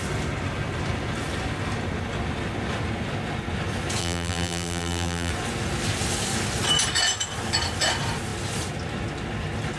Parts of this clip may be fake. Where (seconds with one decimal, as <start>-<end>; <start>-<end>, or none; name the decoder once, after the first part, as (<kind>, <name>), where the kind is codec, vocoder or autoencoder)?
4.0-5.3 (vocoder, BigVGAN v2)